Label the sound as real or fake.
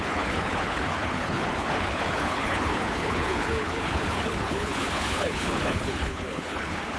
fake